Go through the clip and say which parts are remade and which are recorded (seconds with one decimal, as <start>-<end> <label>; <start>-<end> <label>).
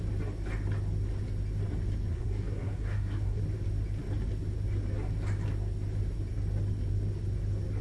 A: 0.0-2.1 recorded; 2.1-3.4 remade; 3.4-7.8 recorded